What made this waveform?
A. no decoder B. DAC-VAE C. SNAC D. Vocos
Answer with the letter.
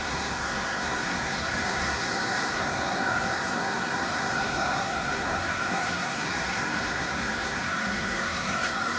C